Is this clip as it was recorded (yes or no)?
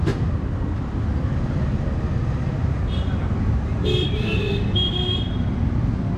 yes